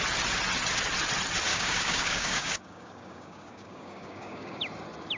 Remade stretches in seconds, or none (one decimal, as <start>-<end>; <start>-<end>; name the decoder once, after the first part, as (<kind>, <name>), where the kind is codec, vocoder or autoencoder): 1.5-4.6 (codec, DAC)